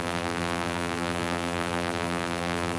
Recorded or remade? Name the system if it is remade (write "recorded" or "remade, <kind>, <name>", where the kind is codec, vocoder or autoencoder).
remade, vocoder, BigVGAN v2